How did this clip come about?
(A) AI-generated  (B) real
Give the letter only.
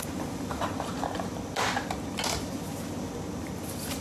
B